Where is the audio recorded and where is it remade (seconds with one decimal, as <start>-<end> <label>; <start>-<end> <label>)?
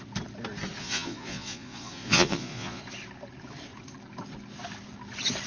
0.0-0.8 recorded; 0.8-2.8 remade; 2.8-5.5 recorded